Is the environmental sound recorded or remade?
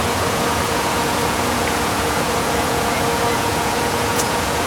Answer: remade